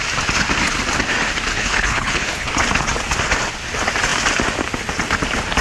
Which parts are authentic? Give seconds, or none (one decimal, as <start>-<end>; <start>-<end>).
0.0-1.5; 2.5-5.6